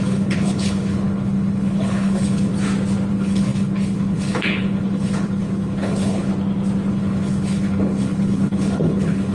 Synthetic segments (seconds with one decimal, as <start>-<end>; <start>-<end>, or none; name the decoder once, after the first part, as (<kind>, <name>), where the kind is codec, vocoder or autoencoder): 0.0-2.5 (codec, HILCodec); 3.1-6.3; 6.9-9.3